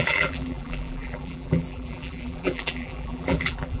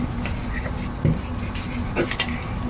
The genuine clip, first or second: second